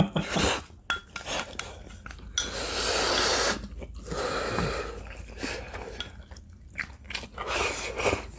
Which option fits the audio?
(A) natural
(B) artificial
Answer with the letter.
A